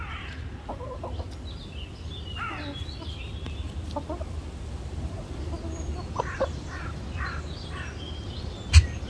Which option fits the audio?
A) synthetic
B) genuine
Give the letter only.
B